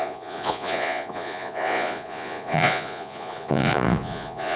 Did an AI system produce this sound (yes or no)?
yes